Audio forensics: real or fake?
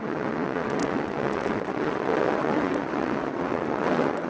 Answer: fake